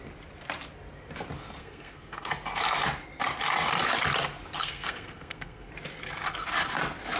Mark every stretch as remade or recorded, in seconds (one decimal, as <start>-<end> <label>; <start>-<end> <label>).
0.0-1.6 recorded; 1.6-2.3 remade; 2.3-4.6 recorded; 4.6-5.7 remade; 5.7-7.2 recorded